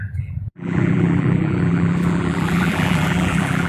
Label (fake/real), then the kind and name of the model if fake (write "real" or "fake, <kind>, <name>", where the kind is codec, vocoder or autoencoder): fake, vocoder, BigVGAN v2